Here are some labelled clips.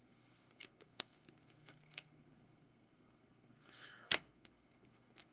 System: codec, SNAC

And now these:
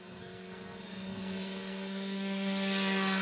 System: codec, SNAC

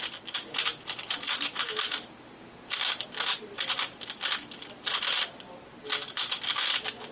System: none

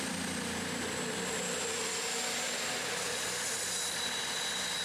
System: none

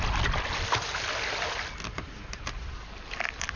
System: none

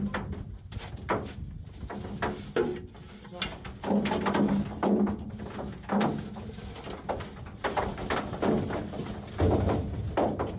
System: none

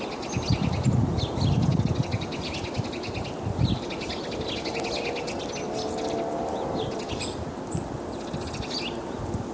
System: none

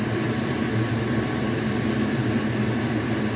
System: none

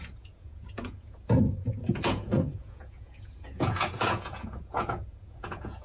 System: vocoder, Vocos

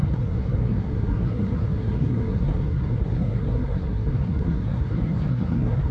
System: codec, SNAC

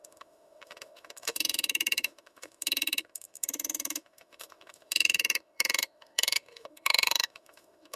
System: autoencoder, DAC-VAE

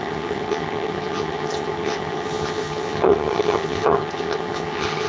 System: vocoder, HiFi-GAN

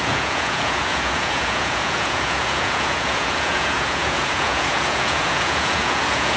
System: vocoder, Vocos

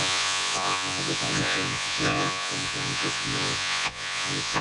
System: vocoder, Vocos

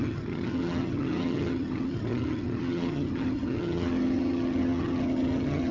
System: vocoder, HiFi-GAN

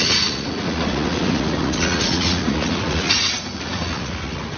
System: vocoder, Vocos